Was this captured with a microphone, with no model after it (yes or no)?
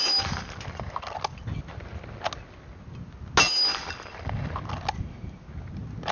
yes